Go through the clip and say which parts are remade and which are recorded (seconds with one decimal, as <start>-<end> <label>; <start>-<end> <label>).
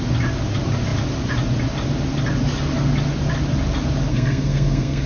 0.0-4.1 recorded; 4.1-5.1 remade